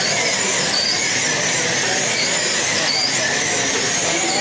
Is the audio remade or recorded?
recorded